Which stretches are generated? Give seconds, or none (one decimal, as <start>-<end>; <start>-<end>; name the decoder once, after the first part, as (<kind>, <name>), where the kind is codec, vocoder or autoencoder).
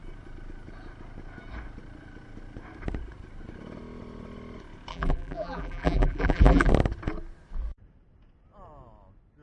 4.9-6.7 (vocoder, BigVGAN v2)